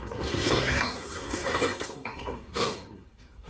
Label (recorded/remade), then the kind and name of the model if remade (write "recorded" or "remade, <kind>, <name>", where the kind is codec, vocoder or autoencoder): remade, codec, SNAC